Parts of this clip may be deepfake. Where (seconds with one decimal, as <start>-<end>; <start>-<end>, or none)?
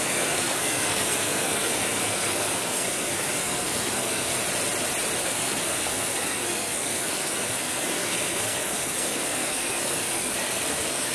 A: 0.0-4.4; 5.2-11.1